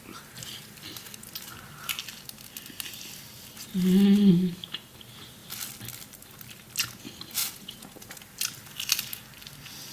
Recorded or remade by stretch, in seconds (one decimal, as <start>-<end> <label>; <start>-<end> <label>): 0.0-7.4 recorded; 7.4-8.1 remade; 8.1-9.9 recorded